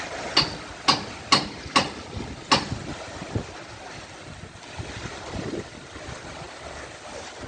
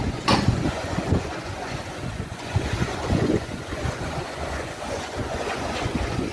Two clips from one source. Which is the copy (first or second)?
second